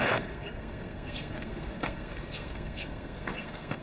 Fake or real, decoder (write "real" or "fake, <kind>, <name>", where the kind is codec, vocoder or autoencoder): fake, codec, SNAC